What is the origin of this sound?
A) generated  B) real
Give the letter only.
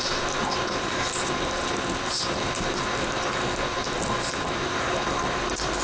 B